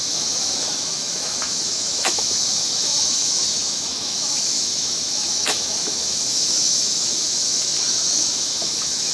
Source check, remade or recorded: remade